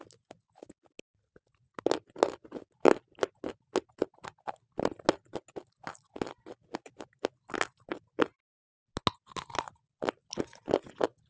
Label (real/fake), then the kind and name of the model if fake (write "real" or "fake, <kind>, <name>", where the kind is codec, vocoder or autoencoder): real